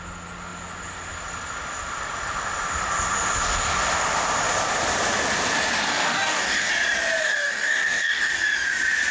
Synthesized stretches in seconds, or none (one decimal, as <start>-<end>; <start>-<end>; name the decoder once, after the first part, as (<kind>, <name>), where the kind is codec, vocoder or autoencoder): 5.9-6.7 (codec, DAC); 7.2-8.3